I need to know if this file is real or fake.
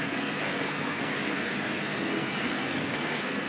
fake